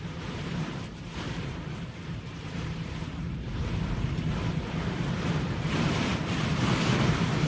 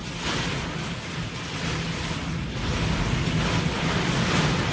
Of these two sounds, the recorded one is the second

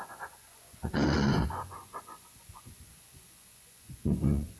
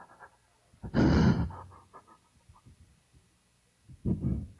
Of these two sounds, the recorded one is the second